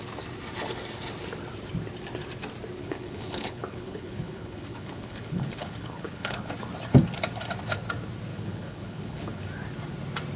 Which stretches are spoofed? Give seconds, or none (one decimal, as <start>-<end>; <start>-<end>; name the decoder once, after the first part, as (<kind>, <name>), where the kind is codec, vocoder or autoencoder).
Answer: 2.8-6.5 (codec, HILCodec); 8.3-9.4

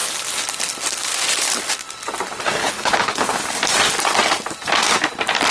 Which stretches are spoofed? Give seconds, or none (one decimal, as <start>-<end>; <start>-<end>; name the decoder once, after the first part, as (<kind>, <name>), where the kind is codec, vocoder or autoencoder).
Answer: 2.6-3.4 (codec, HILCodec)